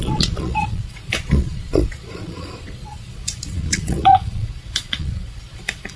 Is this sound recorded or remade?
remade